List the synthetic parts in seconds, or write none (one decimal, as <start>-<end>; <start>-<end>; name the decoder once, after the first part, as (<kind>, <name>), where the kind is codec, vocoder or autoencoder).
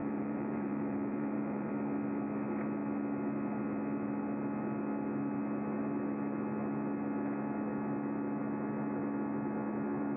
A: 0.0-1.7 (vocoder, BigVGAN v2)